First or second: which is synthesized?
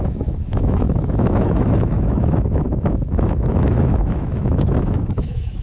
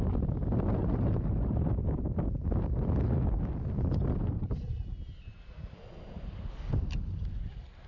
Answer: first